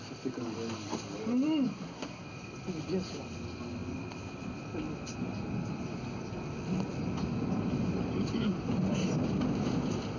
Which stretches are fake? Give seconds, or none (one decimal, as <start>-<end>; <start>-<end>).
1.7-2.2